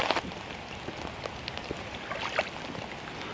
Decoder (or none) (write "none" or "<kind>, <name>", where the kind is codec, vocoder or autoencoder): none